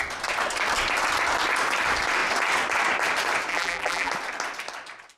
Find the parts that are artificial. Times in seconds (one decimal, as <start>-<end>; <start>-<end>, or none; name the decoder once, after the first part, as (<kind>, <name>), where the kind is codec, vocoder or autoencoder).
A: 3.5-4.1 (vocoder, BigVGAN v2)